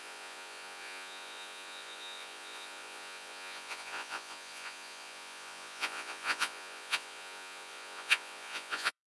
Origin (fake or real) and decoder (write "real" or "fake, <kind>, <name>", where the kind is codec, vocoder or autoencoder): fake, vocoder, Vocos